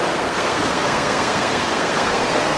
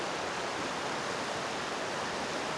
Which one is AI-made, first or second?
first